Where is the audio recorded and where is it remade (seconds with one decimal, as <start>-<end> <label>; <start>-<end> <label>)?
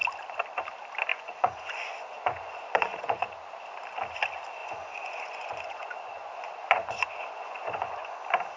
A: 0.0-1.1 recorded; 1.1-3.4 remade; 3.4-4.6 recorded; 4.6-8.2 remade; 8.2-8.6 recorded